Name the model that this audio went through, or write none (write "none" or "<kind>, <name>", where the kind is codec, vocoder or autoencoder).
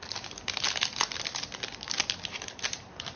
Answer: none